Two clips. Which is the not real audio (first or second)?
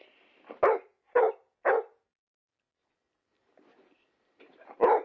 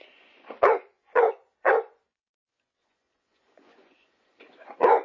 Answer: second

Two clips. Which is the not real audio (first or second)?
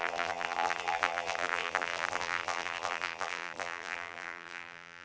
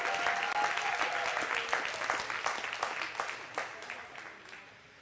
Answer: first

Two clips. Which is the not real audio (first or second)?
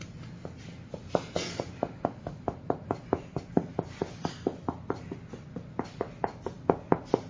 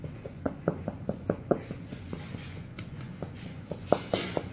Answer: second